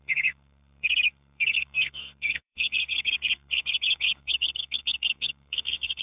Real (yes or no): no